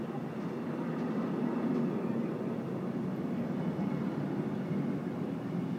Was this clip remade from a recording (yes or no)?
no